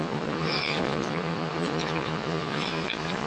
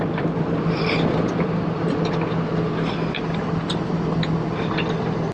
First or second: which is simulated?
first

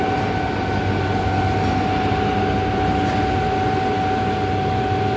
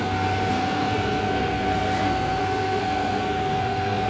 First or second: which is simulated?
second